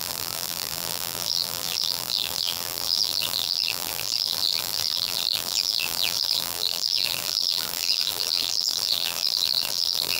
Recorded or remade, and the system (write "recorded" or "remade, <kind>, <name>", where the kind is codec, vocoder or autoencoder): remade, vocoder, BigVGAN v2